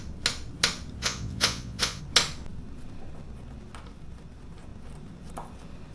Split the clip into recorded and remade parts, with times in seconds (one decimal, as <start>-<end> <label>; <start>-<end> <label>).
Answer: 0.0-1.0 recorded; 1.0-2.0 remade; 2.0-5.9 recorded